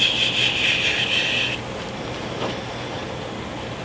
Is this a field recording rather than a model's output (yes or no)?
yes